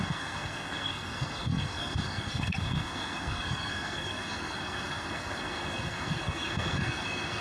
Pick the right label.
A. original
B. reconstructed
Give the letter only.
B